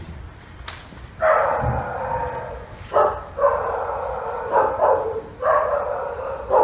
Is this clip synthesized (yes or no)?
no